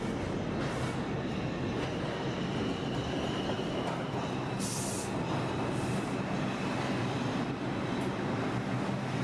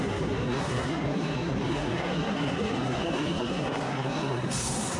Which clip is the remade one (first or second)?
second